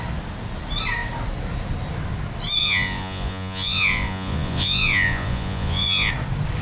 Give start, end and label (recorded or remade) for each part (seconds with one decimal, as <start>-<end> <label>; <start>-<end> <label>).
0.0-2.6 recorded; 2.6-6.1 remade; 6.1-6.6 recorded